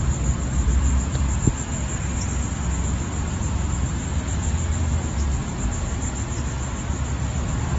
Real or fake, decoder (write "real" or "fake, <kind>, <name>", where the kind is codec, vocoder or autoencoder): fake, vocoder, BigVGAN v2